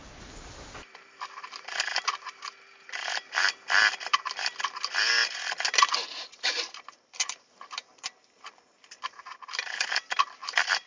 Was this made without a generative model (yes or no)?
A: no